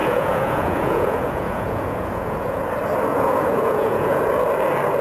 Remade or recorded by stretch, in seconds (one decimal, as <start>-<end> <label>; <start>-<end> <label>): 0.0-2.6 remade; 2.6-3.1 recorded; 3.1-4.2 remade; 4.2-5.0 recorded